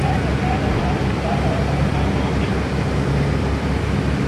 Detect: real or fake real